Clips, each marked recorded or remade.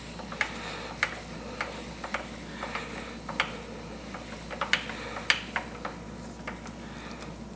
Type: recorded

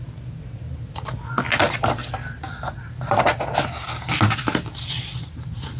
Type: recorded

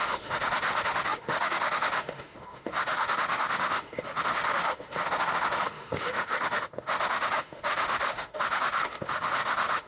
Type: remade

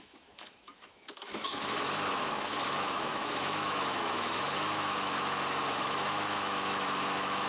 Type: remade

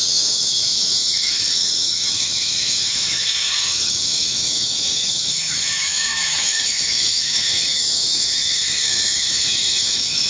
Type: remade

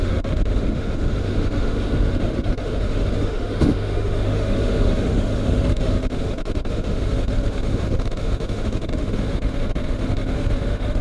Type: remade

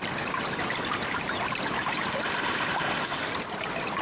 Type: recorded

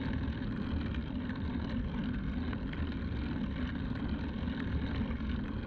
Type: recorded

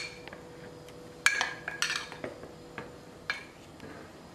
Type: recorded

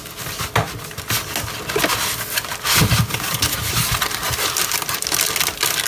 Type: recorded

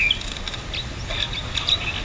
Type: recorded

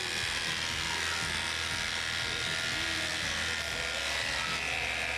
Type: recorded